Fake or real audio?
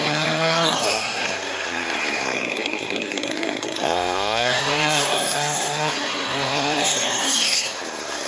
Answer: fake